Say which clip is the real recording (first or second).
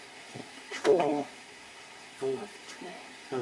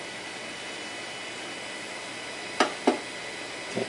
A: second